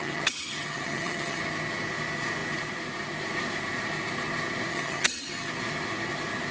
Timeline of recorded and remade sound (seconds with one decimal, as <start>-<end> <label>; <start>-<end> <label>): 0.0-1.4 remade; 1.4-4.7 recorded; 4.7-5.5 remade; 5.5-6.5 recorded

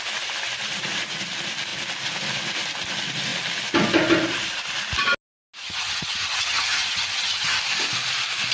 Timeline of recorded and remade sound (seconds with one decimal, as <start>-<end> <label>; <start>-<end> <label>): 0.0-5.6 recorded; 5.6-7.6 remade; 7.6-8.5 recorded

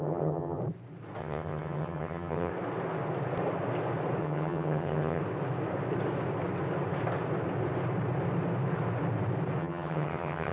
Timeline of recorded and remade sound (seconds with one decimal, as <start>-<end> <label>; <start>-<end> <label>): 0.0-0.6 remade; 0.6-1.2 recorded; 1.2-2.5 remade; 2.5-4.2 recorded; 4.2-5.2 remade; 5.2-9.6 recorded; 9.6-10.5 remade

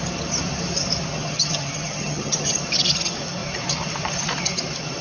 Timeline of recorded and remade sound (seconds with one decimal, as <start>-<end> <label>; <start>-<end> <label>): 0.0-1.1 recorded; 1.1-2.5 remade; 2.5-5.0 recorded

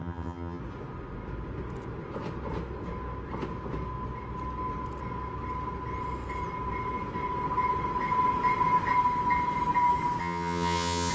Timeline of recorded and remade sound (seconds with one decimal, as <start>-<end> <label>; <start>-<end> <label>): 0.0-0.6 remade; 0.6-10.2 recorded; 10.2-11.1 remade